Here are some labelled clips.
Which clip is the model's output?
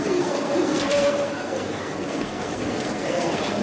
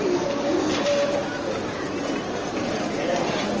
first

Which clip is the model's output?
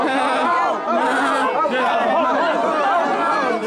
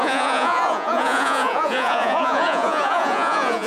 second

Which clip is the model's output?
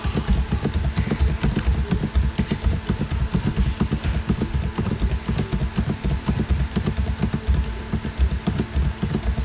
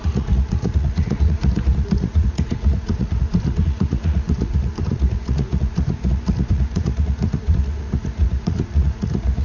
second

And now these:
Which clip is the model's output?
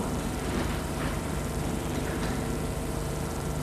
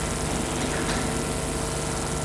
first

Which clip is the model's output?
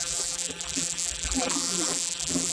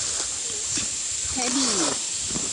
first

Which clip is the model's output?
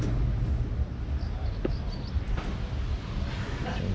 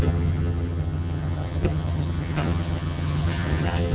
second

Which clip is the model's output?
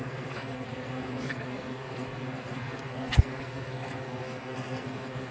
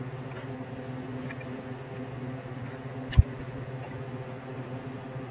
first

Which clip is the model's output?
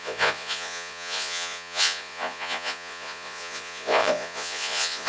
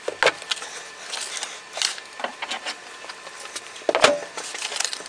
first